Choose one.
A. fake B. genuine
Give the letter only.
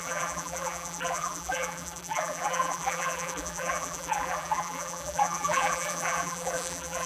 A